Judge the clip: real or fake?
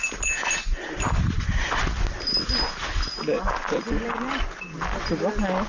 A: real